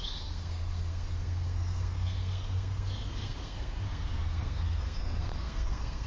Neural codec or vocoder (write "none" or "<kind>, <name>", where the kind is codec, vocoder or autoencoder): codec, SNAC